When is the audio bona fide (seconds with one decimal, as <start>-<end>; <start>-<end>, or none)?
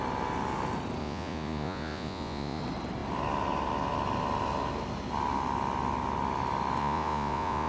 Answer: 0.0-1.0; 2.6-6.8